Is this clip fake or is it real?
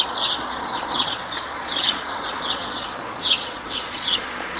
fake